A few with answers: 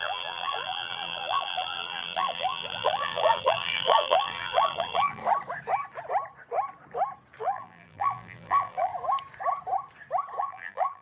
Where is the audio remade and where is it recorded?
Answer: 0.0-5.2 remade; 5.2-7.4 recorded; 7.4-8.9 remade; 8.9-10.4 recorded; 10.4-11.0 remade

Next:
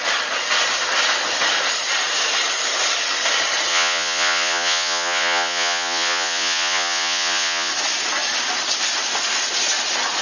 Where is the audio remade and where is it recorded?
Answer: 0.0-3.7 recorded; 3.7-7.7 remade; 7.7-10.2 recorded

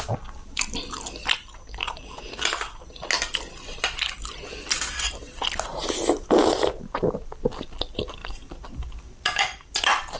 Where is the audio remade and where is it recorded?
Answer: 0.0-10.2 recorded

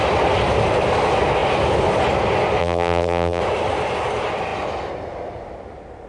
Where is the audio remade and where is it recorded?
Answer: 0.0-2.6 recorded; 2.6-3.4 remade; 3.4-6.1 recorded